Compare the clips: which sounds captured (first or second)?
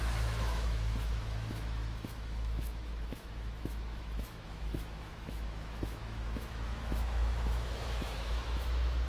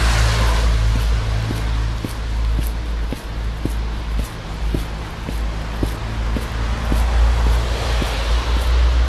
second